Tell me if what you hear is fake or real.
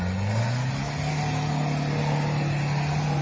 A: real